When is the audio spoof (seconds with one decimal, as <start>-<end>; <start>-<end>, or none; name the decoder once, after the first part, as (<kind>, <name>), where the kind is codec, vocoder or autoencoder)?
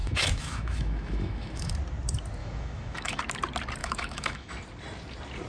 0.0-1.7 (autoencoder, DAC-VAE); 2.4-3.2; 3.8-4.5